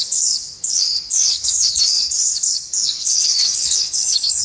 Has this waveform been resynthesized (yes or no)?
yes